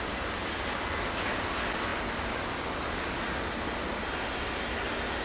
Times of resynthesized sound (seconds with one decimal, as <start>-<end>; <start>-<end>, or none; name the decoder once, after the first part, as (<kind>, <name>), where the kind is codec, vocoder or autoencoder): none